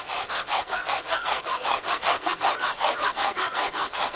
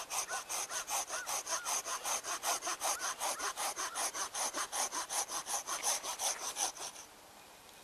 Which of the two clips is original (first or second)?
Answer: second